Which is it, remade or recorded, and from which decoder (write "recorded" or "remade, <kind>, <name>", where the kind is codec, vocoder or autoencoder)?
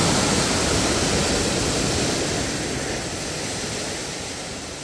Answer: recorded